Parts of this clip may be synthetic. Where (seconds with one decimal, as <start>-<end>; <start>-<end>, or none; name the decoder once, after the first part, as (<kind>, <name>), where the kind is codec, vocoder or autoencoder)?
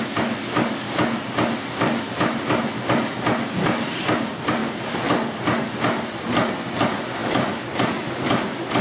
none